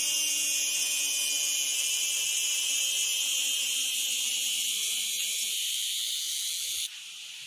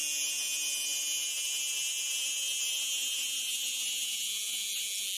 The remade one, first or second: first